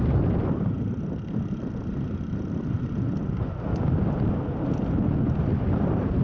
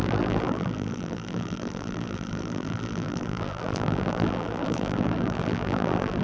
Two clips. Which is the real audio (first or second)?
first